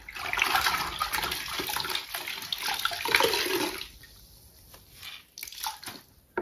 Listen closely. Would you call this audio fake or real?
real